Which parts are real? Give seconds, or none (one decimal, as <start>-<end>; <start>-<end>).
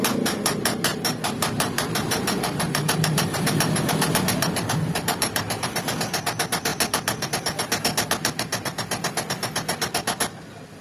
0.0-0.9; 5.8-10.8